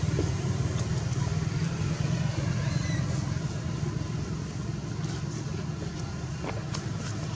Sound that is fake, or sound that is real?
real